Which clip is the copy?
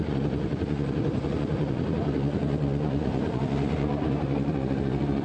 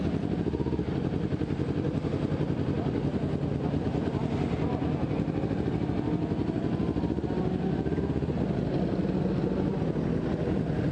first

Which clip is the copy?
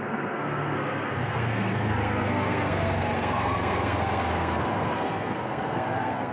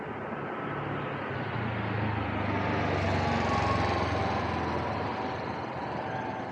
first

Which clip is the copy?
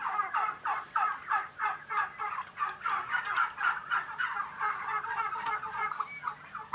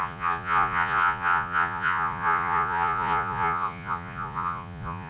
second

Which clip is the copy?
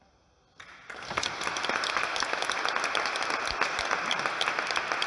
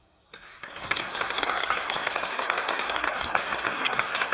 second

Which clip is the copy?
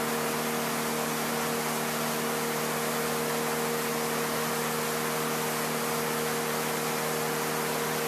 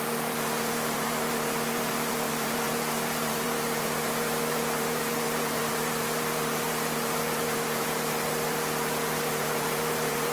second